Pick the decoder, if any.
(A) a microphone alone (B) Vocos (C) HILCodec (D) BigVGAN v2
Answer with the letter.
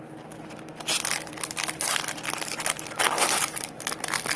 A